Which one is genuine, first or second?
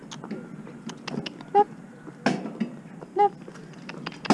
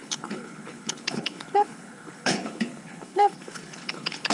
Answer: first